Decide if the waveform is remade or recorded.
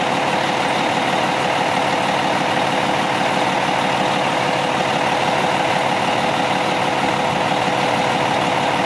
recorded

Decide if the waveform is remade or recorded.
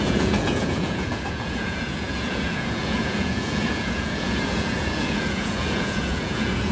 remade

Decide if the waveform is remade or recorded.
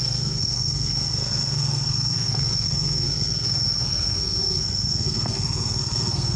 remade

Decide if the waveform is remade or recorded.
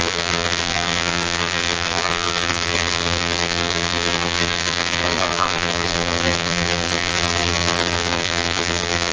remade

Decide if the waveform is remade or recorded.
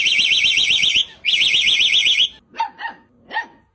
recorded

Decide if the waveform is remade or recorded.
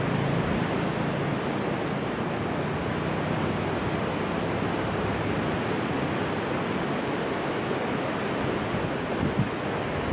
recorded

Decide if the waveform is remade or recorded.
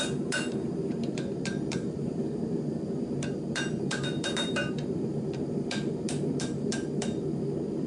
remade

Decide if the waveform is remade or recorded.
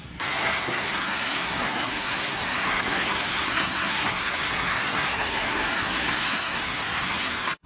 remade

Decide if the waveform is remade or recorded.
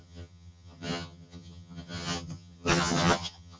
remade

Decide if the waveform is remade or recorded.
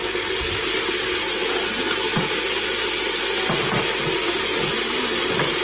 recorded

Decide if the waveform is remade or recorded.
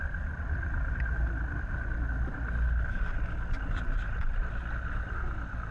recorded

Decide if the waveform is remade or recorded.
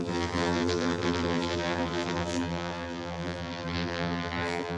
remade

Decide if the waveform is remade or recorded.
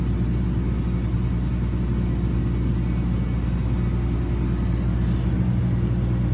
recorded